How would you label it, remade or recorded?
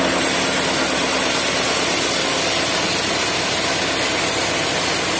recorded